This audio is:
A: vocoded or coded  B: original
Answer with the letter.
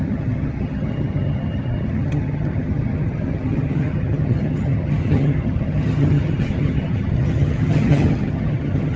A